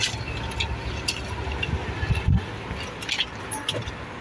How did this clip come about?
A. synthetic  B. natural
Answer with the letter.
B